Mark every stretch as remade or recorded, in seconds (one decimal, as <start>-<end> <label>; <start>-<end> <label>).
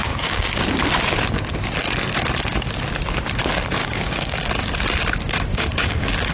0.0-0.6 remade; 0.6-3.8 recorded; 3.8-4.5 remade; 4.5-5.5 recorded; 5.5-6.3 remade